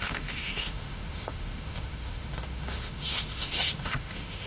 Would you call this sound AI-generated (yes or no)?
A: yes